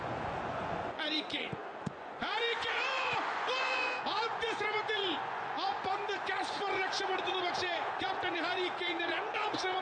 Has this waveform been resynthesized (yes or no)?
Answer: yes